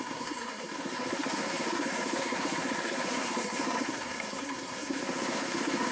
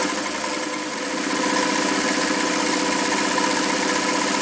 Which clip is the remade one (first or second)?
first